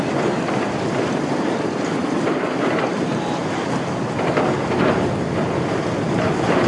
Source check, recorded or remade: recorded